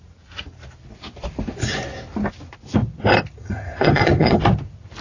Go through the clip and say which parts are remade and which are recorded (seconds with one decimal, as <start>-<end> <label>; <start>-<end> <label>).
0.0-3.4 recorded; 3.4-4.4 remade; 4.4-5.0 recorded